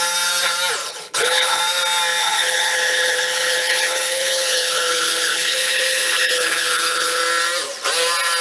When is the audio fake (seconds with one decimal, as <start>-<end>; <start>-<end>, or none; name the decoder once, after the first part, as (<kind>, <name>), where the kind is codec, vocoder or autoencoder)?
0.8-1.6 (codec, HILCodec); 2.2-7.2